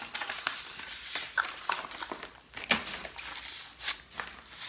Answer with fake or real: real